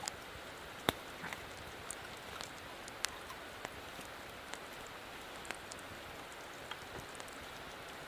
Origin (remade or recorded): recorded